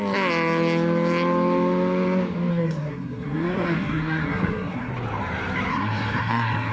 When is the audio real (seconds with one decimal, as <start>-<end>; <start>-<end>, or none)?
0.0-2.5; 4.9-5.7